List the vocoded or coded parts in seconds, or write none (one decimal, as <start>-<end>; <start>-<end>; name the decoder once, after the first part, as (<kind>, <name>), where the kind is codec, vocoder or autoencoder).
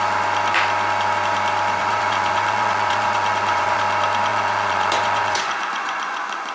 1.8-3.8 (vocoder, Vocos); 4.3-6.5